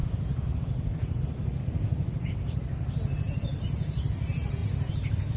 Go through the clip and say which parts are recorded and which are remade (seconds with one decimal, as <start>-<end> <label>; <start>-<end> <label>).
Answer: 0.0-1.2 remade; 1.2-5.4 recorded